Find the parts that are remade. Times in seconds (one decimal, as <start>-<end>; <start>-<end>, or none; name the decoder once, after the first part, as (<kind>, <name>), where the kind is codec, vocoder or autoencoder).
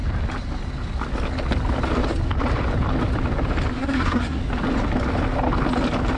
3.7-4.4 (codec, SNAC)